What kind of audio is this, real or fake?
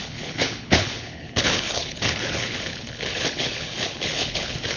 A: fake